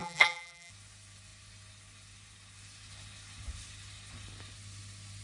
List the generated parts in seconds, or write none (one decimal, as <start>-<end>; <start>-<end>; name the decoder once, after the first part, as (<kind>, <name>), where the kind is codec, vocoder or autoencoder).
0.0-0.7 (vocoder, BigVGAN v2)